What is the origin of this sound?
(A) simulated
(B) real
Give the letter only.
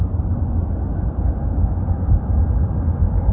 B